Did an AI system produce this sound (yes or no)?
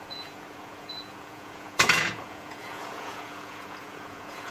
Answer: yes